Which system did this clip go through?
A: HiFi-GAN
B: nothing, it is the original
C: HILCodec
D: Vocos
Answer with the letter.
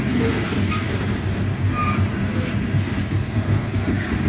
B